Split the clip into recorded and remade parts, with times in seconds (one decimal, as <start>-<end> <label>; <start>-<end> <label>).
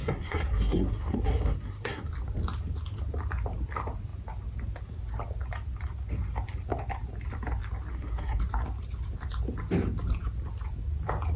0.0-2.1 remade; 2.1-7.9 recorded; 7.9-8.4 remade; 8.4-11.4 recorded